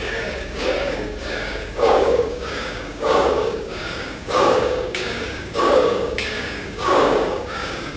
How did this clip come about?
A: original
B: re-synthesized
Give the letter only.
B